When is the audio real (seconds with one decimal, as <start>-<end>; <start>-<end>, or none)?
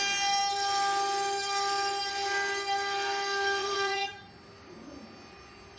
0.0-3.6; 4.3-5.8